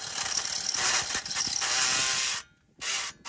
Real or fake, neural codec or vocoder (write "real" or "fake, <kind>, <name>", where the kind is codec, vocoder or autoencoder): real